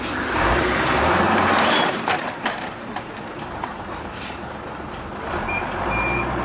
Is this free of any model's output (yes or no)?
no